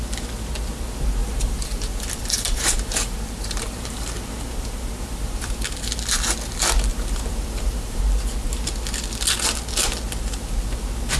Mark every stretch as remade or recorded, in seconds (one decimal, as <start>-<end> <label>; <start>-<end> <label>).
0.0-1.2 recorded; 1.2-5.9 remade; 5.9-6.9 recorded; 6.9-8.0 remade; 8.0-11.2 recorded